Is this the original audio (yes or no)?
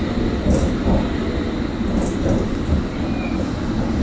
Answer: yes